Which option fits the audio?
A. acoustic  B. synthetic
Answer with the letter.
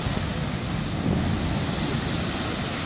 A